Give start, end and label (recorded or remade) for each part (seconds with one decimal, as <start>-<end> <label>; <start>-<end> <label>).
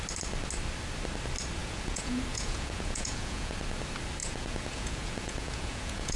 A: 0.0-1.6 recorded; 1.6-3.5 remade; 3.5-4.2 recorded; 4.2-6.2 remade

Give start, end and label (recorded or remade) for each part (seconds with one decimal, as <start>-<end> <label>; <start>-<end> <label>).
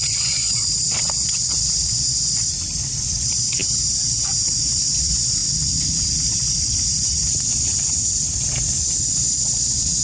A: 0.0-3.6 remade; 3.6-4.4 recorded; 4.4-10.0 remade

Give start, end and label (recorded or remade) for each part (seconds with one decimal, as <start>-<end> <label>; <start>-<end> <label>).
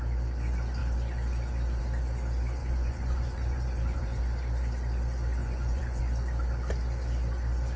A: 0.0-2.6 recorded; 2.6-4.2 remade; 4.2-5.4 recorded; 5.4-6.0 remade; 6.0-7.8 recorded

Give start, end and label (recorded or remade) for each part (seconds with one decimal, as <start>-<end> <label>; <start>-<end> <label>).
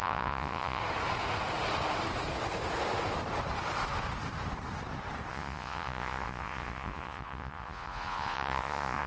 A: 0.0-0.8 remade; 0.8-5.3 recorded; 5.3-9.1 remade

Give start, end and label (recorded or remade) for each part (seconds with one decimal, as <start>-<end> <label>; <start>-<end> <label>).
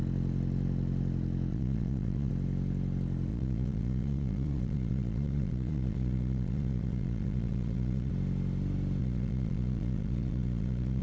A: 0.0-1.5 recorded; 1.5-2.3 remade; 2.3-3.3 recorded; 3.3-8.1 remade; 8.1-9.0 recorded; 9.0-11.0 remade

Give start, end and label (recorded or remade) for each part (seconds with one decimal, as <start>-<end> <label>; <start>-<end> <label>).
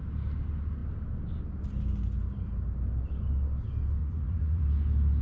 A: 0.0-4.0 recorded; 4.0-4.6 remade; 4.6-5.2 recorded